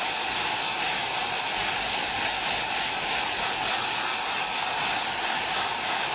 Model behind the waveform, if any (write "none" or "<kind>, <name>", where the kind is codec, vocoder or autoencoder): none